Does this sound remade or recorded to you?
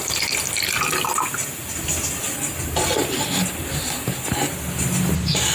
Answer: recorded